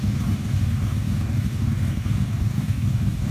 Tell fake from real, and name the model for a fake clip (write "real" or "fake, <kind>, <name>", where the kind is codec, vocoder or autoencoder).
fake, codec, DAC